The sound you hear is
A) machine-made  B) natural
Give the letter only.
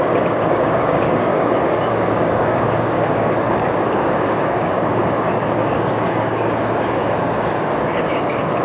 A